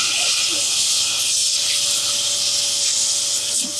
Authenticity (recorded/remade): recorded